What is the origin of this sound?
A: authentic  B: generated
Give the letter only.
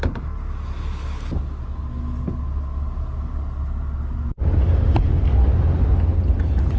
A